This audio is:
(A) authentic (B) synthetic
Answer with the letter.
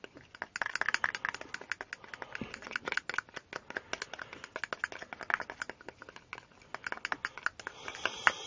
A